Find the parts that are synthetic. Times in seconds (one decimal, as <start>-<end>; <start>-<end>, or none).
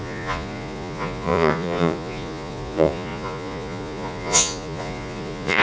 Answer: 0.0-5.6